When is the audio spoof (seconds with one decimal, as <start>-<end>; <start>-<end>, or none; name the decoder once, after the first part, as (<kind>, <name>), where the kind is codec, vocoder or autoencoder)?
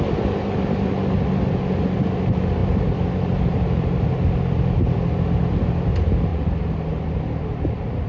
2.6-4.1 (vocoder, BigVGAN v2); 6.3-6.8